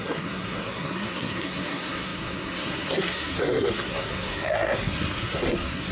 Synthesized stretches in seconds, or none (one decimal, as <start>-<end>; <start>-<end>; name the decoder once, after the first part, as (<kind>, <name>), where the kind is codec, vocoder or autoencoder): 0.0-5.9 (codec, SNAC)